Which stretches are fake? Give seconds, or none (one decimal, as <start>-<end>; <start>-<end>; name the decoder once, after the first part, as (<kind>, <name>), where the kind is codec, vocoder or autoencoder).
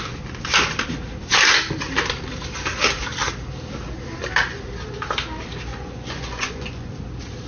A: 5.7-6.9 (vocoder, Vocos)